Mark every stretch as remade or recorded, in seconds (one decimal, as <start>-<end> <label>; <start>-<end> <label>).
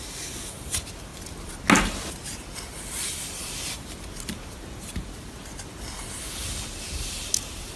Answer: 0.0-7.8 recorded